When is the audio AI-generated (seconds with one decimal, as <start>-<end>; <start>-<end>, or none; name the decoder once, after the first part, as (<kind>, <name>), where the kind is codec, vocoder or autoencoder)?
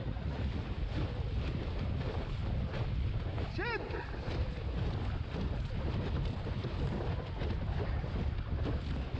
0.0-0.5 (vocoder, Vocos)